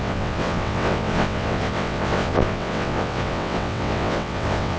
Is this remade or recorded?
remade